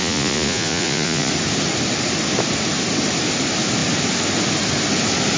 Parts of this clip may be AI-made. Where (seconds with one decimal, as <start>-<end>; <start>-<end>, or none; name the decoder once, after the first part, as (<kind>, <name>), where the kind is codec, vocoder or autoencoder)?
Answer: 0.0-1.3 (vocoder, Vocos)